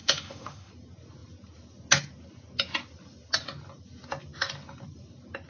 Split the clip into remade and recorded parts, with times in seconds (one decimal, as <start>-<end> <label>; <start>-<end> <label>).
0.0-0.7 remade; 0.7-5.5 recorded